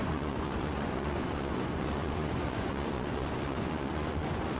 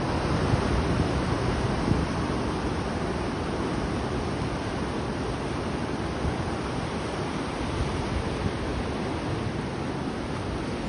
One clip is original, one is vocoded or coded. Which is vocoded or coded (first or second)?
first